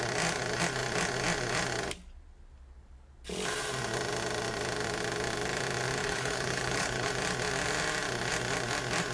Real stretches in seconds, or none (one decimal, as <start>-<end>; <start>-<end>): 0.0-6.0; 7.1-9.1